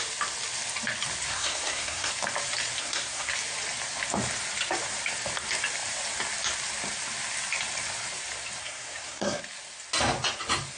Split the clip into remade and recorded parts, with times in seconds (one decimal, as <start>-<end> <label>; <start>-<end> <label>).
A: 0.0-1.3 recorded; 1.3-2.1 remade; 2.1-2.8 recorded; 2.8-3.3 remade; 3.3-8.6 recorded; 8.6-9.4 remade; 9.4-10.8 recorded